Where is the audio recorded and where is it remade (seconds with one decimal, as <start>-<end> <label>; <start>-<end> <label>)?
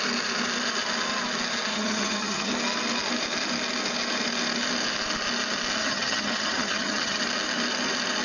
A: 0.0-1.7 recorded; 1.7-2.5 remade; 2.5-5.8 recorded; 5.8-7.2 remade; 7.2-8.2 recorded